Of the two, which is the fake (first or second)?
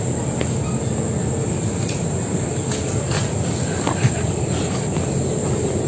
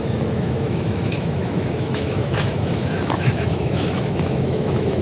second